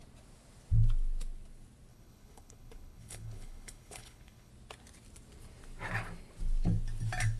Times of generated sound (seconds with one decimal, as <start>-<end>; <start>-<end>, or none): 1.9-4.5